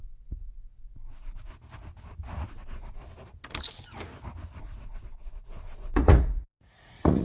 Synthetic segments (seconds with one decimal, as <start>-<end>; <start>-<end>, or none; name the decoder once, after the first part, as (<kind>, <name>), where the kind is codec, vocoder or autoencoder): 0.0-1.5 (vocoder, Vocos); 2.5-3.0; 4.6-7.2